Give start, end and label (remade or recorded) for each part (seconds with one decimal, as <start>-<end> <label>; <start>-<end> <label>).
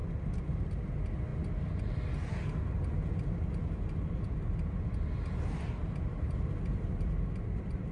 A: 0.0-7.9 recorded